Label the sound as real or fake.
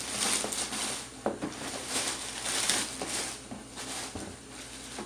real